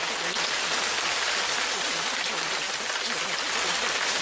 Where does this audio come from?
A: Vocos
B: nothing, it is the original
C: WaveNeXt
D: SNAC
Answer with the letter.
B